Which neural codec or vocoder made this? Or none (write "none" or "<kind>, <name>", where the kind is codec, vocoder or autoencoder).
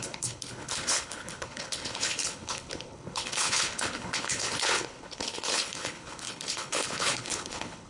codec, HILCodec